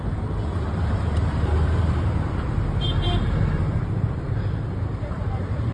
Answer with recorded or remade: remade